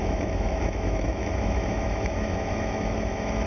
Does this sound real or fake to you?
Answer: fake